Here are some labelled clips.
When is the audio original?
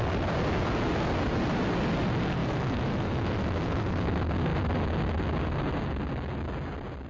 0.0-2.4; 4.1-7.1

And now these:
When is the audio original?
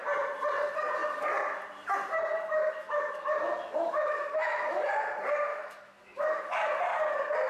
0.0-2.3; 4.9-5.5; 6.7-7.5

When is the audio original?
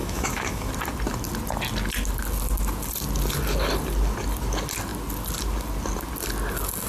0.7-6.9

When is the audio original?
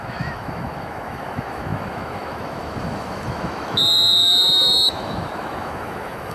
none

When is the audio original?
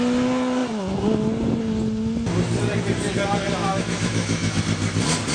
0.0-3.6; 4.6-5.3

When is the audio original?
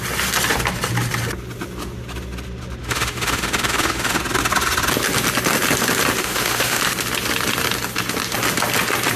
0.0-2.8; 4.2-6.2; 6.8-9.2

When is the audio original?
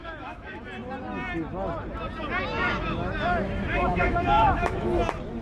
0.6-3.7; 4.9-5.4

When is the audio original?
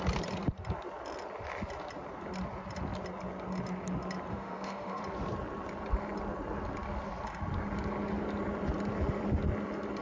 0.0-4.3; 5.0-10.0